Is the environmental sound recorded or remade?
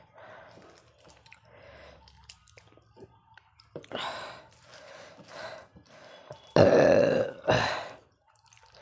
remade